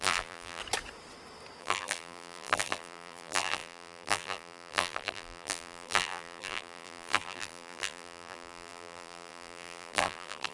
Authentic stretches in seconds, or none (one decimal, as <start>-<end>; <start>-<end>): 0.6-1.6

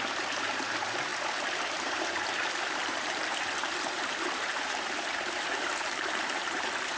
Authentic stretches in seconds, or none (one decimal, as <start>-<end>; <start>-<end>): 1.1-1.6

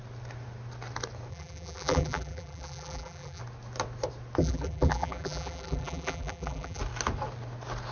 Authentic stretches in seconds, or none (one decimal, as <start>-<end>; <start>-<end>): 0.0-1.3; 3.4-4.4; 6.8-7.9

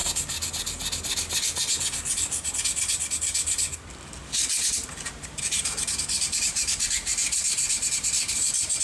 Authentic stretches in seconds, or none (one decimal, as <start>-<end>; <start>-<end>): 0.0-4.7